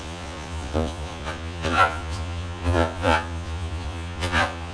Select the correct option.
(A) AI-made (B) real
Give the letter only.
A